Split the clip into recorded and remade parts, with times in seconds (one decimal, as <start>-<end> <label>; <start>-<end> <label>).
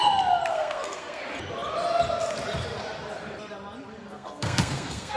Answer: 0.0-0.5 recorded; 0.5-1.2 remade; 1.2-4.1 recorded; 4.1-5.2 remade